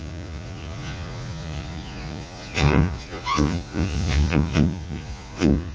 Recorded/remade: remade